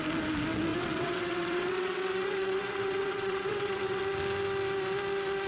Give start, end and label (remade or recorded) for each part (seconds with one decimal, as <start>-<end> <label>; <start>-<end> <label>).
0.0-0.7 recorded; 0.7-4.0 remade; 4.0-5.5 recorded